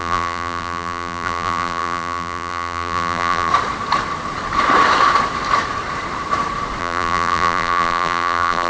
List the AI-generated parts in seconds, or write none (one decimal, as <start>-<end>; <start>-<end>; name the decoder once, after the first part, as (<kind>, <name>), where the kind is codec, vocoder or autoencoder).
0.0-3.5 (vocoder, BigVGAN v2); 6.8-8.7